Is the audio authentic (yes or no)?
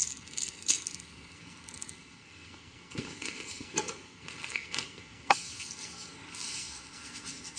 no